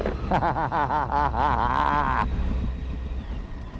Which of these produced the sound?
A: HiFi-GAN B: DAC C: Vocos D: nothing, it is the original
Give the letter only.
D